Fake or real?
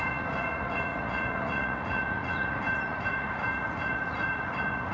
fake